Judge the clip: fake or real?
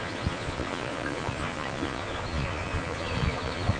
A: fake